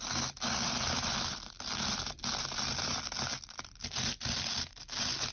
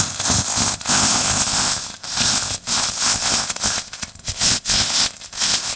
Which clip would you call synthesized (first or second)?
second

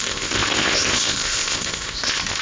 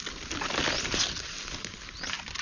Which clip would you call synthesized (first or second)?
first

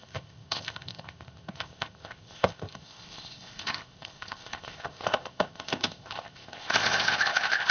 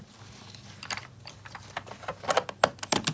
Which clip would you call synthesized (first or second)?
first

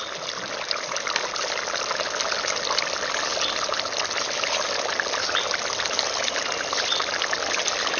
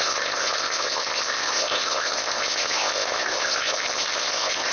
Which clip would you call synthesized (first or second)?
second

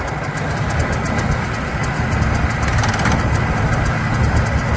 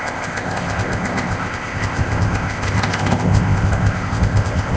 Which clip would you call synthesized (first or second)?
second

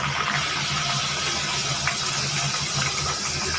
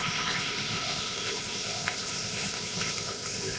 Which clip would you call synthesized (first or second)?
second